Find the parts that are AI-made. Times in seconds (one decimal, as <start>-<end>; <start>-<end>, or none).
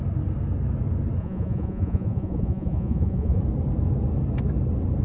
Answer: 1.2-3.4